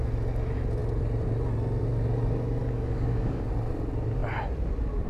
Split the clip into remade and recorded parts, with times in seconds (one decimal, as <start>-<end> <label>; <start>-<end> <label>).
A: 0.0-2.6 recorded; 2.6-3.5 remade; 3.5-5.1 recorded

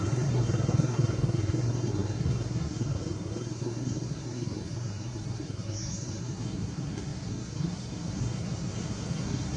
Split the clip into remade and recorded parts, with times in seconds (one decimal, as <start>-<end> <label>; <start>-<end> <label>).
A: 0.0-9.6 remade

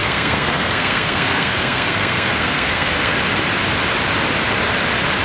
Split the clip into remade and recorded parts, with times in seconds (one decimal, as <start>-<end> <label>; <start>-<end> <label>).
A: 0.0-3.1 remade; 3.1-5.2 recorded

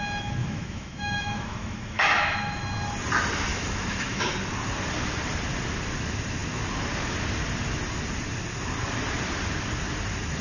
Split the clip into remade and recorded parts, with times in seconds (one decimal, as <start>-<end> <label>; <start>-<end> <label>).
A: 0.0-0.4 recorded; 0.4-2.6 remade; 2.6-3.5 recorded; 3.5-4.3 remade; 4.3-10.4 recorded

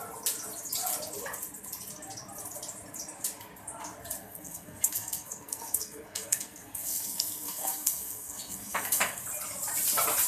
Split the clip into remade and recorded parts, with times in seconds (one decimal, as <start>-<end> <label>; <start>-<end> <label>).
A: 0.0-4.2 recorded; 4.2-9.2 remade; 9.2-10.3 recorded